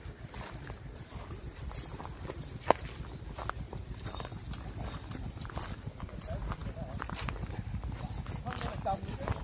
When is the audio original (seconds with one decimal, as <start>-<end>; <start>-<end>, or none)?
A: 0.0-9.4